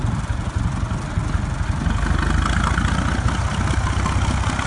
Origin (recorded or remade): recorded